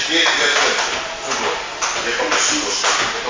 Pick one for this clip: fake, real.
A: real